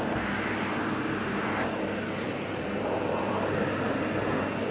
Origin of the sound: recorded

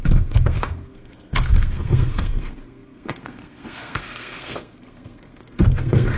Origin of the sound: remade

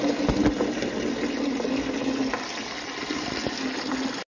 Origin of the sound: recorded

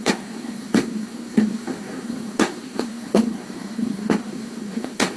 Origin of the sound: remade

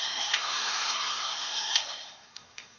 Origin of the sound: remade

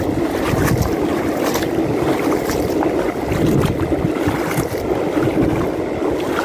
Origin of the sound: recorded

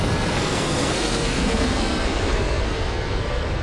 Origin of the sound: remade